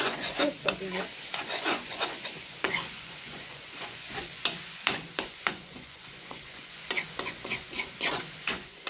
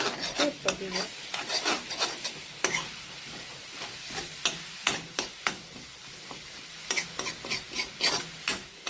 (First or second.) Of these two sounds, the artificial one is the first